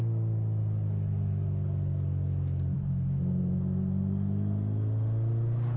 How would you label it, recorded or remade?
recorded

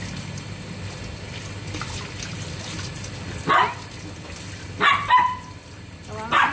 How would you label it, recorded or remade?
recorded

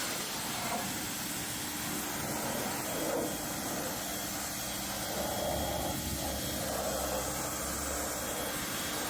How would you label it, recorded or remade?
recorded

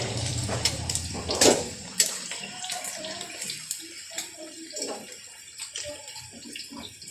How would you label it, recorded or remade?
remade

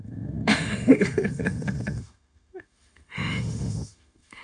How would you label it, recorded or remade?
remade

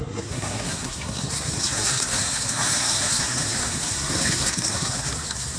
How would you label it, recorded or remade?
remade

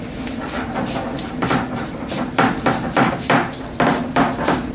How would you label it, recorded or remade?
remade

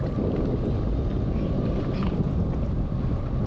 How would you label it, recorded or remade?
recorded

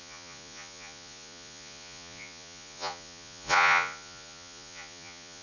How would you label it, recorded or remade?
remade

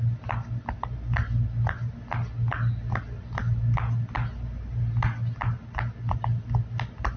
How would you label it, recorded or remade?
recorded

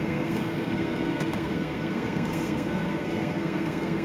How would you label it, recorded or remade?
remade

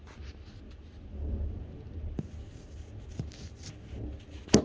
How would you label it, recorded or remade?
recorded